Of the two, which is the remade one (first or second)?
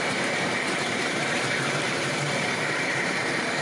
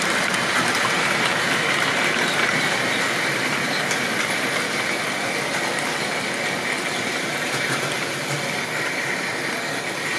first